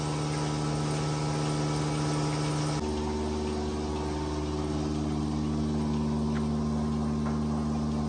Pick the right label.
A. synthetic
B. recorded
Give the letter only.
B